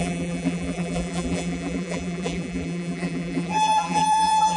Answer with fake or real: fake